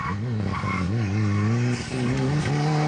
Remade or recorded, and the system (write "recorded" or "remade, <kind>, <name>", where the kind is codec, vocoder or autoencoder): remade, codec, DAC